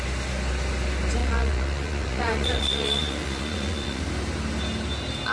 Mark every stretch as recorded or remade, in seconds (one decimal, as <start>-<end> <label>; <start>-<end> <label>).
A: 0.0-1.2 recorded; 1.2-4.0 remade; 4.0-5.3 recorded